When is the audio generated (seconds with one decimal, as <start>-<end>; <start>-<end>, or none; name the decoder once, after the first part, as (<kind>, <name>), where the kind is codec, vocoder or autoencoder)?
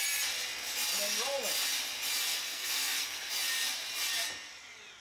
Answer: 2.3-3.3 (codec, SNAC)